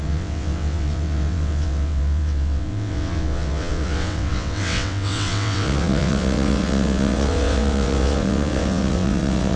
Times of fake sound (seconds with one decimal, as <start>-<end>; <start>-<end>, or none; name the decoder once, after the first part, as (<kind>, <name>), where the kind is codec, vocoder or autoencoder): 0.0-9.6 (vocoder, WaveNeXt)